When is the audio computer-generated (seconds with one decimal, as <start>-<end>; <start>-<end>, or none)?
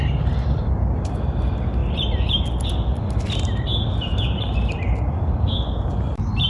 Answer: none